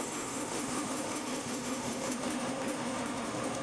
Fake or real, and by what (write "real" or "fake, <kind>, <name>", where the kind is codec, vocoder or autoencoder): fake, autoencoder, DAC-VAE